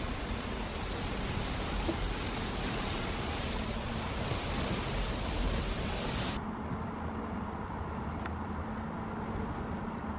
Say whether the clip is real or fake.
real